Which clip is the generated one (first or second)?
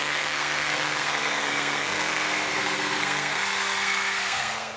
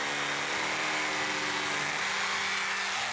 first